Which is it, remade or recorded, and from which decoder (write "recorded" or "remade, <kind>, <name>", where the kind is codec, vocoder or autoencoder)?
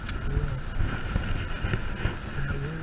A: recorded